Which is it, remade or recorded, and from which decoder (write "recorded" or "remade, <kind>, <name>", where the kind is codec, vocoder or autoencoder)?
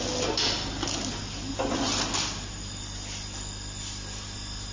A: recorded